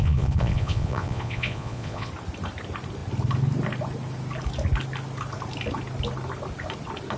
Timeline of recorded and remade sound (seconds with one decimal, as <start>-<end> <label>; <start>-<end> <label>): 0.0-2.1 remade; 2.1-7.2 recorded

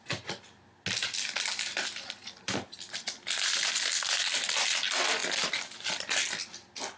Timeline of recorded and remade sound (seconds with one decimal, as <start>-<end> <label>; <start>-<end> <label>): 0.0-7.0 recorded

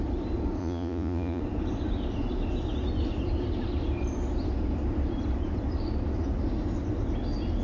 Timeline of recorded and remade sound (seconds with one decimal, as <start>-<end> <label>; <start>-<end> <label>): 0.0-0.6 recorded; 0.6-1.4 remade; 1.4-7.6 recorded

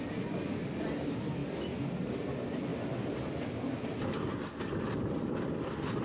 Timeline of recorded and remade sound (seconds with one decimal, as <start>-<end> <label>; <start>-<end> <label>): 0.0-6.0 recorded

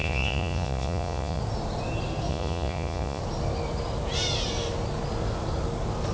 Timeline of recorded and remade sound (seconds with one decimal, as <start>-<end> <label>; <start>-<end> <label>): 0.0-1.4 remade; 1.4-2.3 recorded; 2.3-3.2 remade; 3.2-6.1 recorded

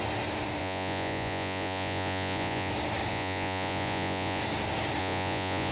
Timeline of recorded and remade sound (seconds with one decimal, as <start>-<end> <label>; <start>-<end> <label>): 0.0-0.6 recorded; 0.6-2.7 remade; 2.7-3.1 recorded; 3.1-4.4 remade; 4.4-5.0 recorded; 5.0-5.7 remade